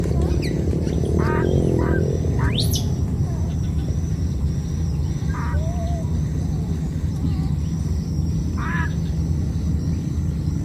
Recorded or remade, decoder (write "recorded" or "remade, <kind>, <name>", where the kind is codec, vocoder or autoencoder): recorded